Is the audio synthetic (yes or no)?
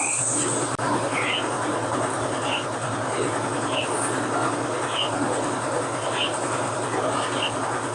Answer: no